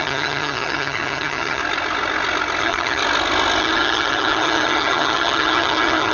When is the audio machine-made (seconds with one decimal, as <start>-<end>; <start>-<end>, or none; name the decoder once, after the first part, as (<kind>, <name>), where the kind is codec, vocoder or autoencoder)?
0.0-1.6 (vocoder, HiFi-GAN); 2.6-3.0; 3.6-6.1